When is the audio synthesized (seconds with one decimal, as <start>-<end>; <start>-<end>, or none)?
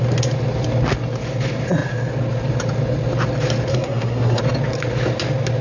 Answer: 3.7-4.4